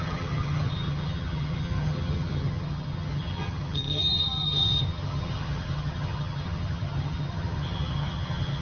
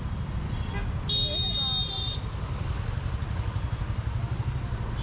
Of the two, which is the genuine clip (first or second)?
second